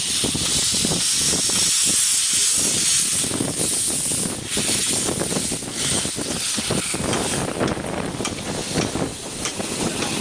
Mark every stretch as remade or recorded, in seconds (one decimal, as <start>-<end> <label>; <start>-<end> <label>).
0.0-10.2 recorded